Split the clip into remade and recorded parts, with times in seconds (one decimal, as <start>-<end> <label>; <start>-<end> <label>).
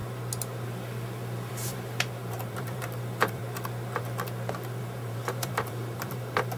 0.0-1.5 recorded; 1.5-3.4 remade; 3.4-4.8 recorded; 4.8-6.6 remade